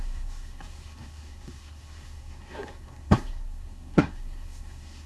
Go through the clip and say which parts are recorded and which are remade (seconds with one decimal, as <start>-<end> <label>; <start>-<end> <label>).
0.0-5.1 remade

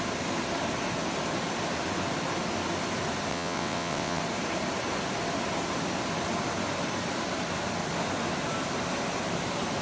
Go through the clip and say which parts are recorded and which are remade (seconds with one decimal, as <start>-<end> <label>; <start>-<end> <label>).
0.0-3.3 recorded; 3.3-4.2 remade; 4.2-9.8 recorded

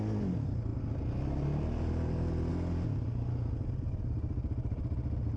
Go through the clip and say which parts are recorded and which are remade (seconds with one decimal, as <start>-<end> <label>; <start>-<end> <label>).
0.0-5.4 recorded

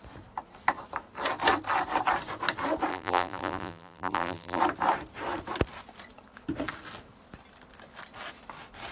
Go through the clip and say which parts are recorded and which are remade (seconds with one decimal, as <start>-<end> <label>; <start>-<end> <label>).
0.0-2.9 recorded; 2.9-4.6 remade; 4.6-8.9 recorded

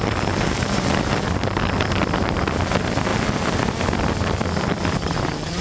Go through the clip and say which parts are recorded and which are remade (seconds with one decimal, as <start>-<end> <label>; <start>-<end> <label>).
0.0-5.6 remade

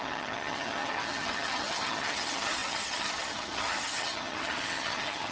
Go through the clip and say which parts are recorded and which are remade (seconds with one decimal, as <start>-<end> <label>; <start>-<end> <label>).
0.0-5.3 remade